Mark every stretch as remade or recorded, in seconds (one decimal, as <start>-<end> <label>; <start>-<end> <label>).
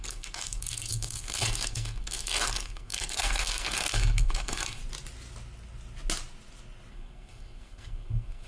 0.0-4.8 remade; 4.8-6.9 recorded; 6.9-8.5 remade